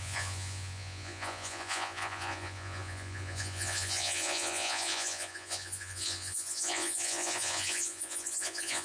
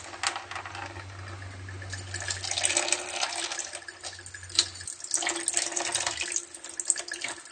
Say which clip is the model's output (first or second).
first